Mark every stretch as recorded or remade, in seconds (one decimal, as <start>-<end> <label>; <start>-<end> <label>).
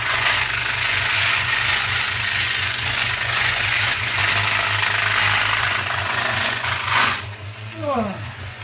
0.0-4.2 remade; 4.2-5.6 recorded; 5.6-8.6 remade